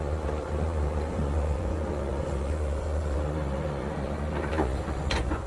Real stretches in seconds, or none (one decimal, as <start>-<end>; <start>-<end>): none